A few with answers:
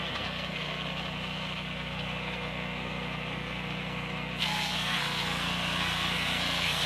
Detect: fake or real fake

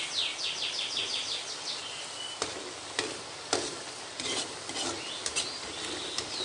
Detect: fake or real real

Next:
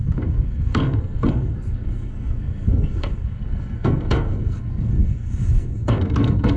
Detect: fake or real fake